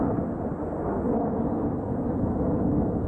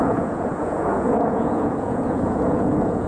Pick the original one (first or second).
first